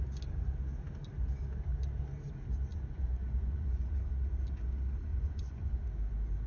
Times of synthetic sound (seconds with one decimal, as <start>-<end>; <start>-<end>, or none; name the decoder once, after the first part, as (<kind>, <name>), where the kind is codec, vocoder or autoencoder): 2.7-4.1 (vocoder, Vocos); 5.1-5.8